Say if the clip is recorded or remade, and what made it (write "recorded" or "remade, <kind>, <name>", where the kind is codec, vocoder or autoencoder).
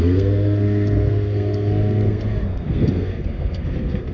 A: remade, codec, SNAC